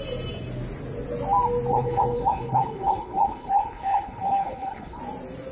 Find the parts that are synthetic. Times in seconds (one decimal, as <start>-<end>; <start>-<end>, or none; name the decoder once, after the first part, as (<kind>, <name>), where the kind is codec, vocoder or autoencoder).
1.7-5.0 (codec, HILCodec)